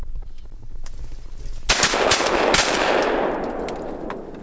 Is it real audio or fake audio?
real